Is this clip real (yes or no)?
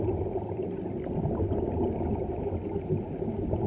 yes